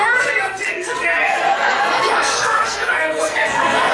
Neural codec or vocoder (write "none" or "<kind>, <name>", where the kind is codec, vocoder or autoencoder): codec, SNAC